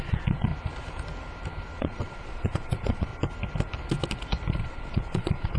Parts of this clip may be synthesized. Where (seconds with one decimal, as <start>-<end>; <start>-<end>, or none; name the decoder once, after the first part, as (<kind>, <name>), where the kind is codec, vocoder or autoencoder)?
0.0-0.5 (vocoder, Vocos); 1.8-3.1; 4.5-5.6